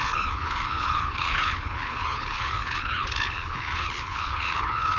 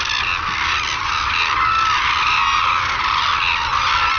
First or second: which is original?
second